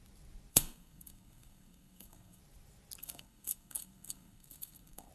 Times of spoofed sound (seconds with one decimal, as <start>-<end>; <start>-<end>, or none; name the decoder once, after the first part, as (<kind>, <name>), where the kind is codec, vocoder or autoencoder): 0.5-2.4 (codec, SNAC); 3.0-5.1